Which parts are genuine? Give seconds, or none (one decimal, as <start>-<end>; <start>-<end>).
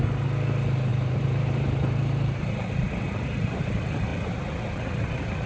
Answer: 0.0-0.9; 3.6-5.5